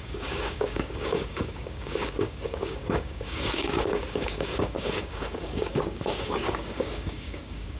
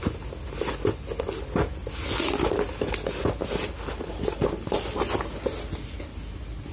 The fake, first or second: first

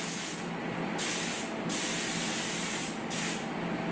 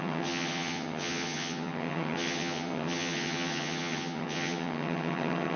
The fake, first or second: second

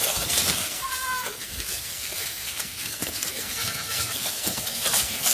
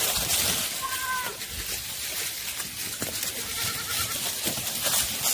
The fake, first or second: first